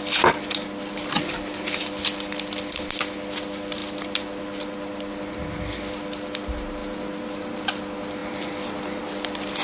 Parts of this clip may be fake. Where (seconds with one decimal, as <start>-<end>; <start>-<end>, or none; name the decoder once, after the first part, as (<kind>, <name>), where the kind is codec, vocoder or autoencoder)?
none